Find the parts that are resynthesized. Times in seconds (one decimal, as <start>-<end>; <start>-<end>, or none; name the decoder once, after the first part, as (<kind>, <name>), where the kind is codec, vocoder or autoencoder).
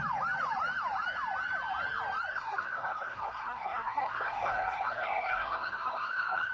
2.3-6.5 (codec, SNAC)